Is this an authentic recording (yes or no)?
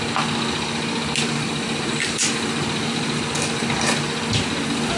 yes